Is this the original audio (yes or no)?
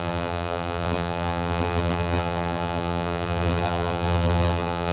no